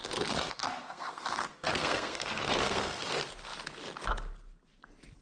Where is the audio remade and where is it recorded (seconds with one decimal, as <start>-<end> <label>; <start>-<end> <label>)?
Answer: 0.0-3.1 remade; 3.1-5.2 recorded